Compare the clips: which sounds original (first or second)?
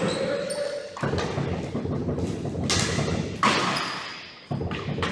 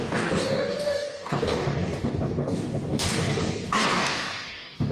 first